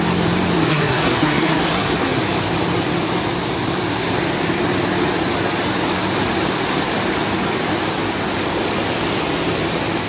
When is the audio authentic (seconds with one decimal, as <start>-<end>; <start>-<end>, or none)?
0.0-0.7; 2.2-10.1